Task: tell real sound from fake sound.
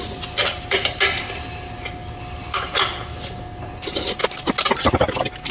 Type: real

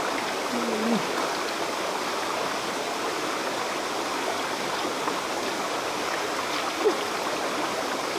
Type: real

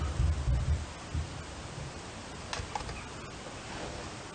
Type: real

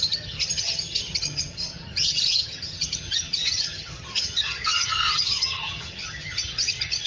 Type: fake